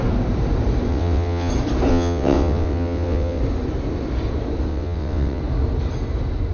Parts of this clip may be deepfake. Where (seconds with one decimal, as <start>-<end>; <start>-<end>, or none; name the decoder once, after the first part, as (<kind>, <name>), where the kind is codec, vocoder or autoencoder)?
0.9-1.5 (vocoder, WaveNeXt); 1.9-3.4; 4.7-5.4